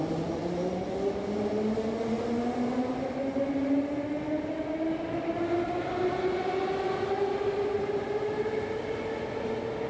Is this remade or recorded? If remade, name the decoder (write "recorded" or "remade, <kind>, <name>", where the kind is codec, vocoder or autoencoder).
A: recorded